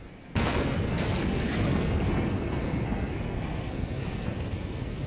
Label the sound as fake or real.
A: fake